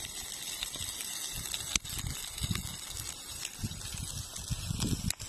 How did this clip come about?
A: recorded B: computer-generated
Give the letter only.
A